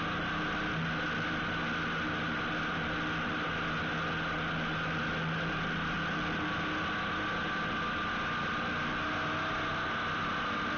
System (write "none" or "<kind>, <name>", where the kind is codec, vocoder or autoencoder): none